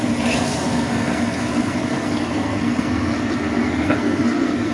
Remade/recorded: remade